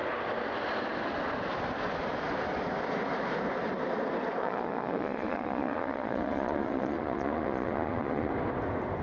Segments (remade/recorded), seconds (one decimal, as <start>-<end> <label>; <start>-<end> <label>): 0.0-4.4 recorded; 4.4-8.3 remade; 8.3-9.0 recorded